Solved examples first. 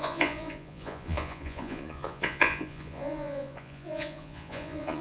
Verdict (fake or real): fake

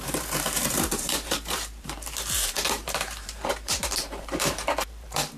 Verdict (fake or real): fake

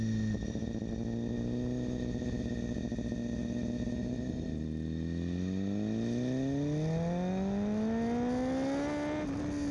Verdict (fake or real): real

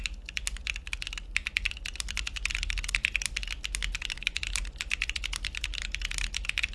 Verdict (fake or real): real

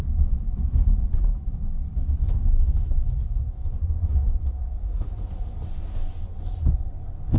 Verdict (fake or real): real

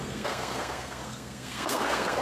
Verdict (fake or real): fake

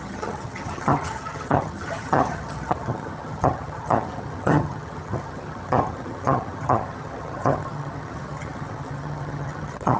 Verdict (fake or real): fake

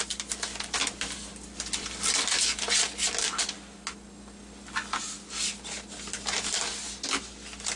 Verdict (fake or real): real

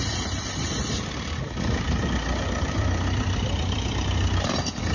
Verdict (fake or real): fake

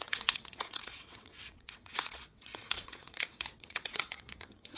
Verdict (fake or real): fake